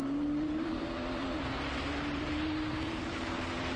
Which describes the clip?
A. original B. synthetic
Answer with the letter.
B